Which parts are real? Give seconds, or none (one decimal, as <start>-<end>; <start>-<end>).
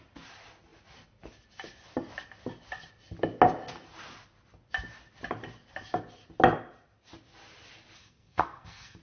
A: 0.0-8.0